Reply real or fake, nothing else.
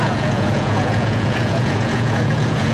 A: fake